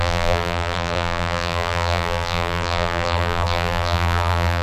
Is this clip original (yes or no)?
no